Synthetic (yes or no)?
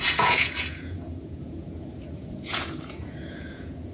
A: yes